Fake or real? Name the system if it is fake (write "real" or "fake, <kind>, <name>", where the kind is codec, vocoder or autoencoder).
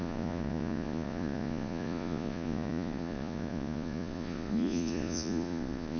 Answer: fake, vocoder, Vocos